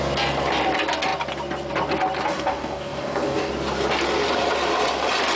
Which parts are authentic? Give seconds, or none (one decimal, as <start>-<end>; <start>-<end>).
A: 0.0-2.3; 3.5-5.4